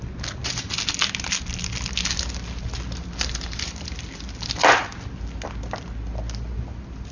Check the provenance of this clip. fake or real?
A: real